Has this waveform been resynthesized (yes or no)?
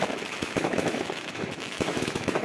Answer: yes